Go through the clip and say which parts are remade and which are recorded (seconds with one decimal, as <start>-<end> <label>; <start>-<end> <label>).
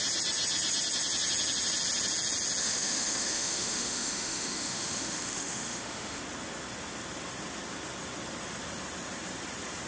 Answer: 0.0-2.6 recorded; 2.6-6.2 remade; 6.2-9.9 recorded